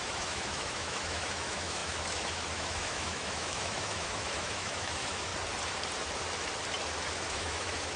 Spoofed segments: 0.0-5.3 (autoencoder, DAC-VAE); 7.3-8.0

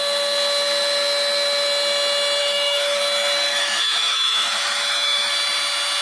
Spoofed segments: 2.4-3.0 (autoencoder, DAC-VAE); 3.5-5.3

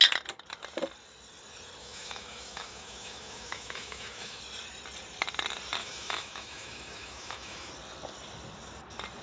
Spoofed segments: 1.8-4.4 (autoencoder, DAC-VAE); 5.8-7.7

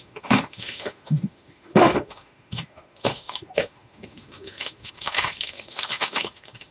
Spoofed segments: 0.0-6.7 (autoencoder, DAC-VAE)

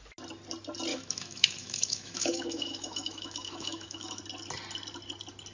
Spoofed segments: 0.9-4.2 (autoencoder, DAC-VAE)